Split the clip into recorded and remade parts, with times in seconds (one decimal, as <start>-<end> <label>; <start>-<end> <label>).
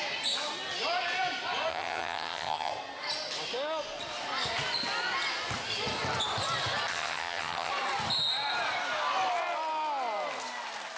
0.0-1.7 recorded; 1.7-2.7 remade; 2.7-6.9 recorded; 6.9-7.7 remade; 7.7-11.0 recorded